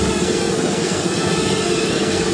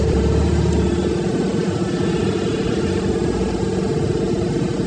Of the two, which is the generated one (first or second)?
first